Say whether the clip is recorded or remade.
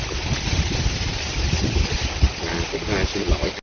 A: recorded